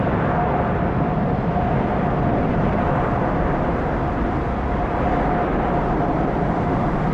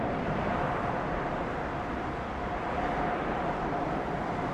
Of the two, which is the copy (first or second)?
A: second